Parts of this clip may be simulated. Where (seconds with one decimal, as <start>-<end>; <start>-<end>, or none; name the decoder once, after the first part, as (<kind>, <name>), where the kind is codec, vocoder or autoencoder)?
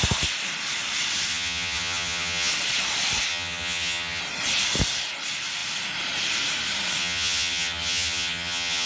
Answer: 1.3-2.5 (vocoder, HiFi-GAN); 3.3-4.2; 7.0-8.9